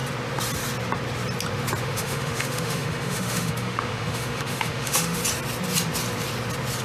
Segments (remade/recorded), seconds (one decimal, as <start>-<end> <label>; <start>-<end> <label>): 0.0-1.8 recorded; 1.8-5.2 remade; 5.2-6.8 recorded